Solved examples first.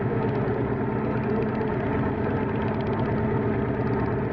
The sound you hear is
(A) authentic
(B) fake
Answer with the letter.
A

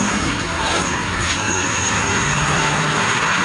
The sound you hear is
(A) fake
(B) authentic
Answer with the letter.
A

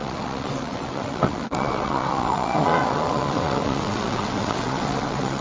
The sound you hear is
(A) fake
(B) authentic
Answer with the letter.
A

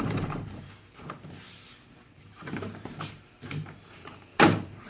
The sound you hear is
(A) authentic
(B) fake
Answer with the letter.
B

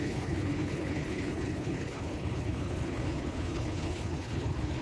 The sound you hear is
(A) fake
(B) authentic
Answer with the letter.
A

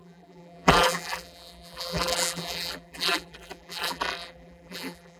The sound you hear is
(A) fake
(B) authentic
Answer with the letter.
A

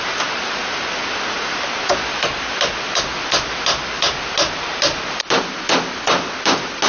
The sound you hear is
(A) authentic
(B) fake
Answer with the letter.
A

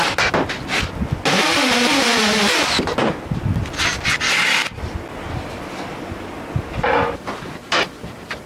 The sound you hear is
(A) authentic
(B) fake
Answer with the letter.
A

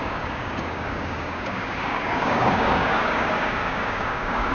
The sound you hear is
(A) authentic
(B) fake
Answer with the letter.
B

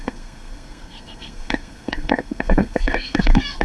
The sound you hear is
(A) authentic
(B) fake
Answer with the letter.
B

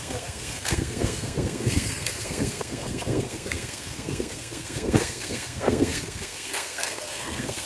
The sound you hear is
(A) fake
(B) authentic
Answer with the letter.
A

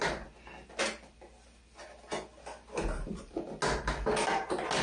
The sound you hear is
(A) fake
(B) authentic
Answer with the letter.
B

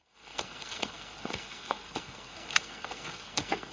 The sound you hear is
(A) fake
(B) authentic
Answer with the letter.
A